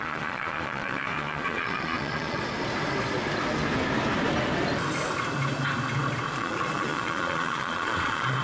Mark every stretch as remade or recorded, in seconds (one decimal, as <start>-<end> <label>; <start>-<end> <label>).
0.0-2.4 remade; 2.4-6.3 recorded; 6.3-8.4 remade